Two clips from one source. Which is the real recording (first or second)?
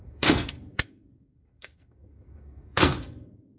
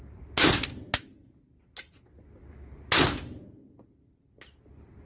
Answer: second